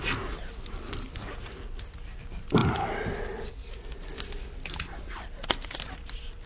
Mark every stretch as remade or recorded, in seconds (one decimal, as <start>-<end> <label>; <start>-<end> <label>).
0.0-6.5 recorded